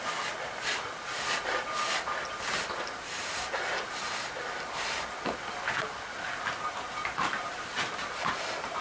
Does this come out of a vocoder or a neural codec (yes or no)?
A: no